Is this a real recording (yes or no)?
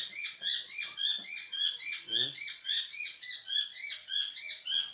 no